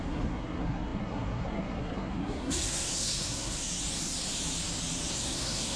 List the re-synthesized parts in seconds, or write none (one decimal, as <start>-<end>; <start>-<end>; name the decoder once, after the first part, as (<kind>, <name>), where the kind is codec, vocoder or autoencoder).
0.0-3.7 (codec, SNAC); 5.1-5.8